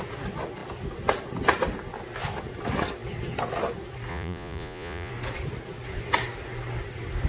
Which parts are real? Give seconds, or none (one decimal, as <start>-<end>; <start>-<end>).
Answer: 0.0-4.1; 5.1-7.3